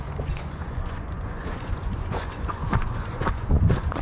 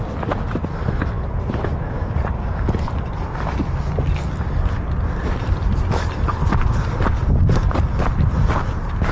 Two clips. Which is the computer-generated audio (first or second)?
first